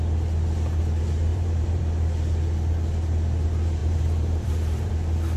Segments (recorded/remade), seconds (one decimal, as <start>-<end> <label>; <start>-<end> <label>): 0.0-1.3 recorded; 1.3-1.8 remade; 1.8-3.8 recorded; 3.8-4.9 remade; 4.9-5.4 recorded